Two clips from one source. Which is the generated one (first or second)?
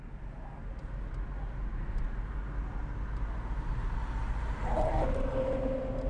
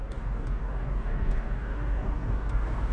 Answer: second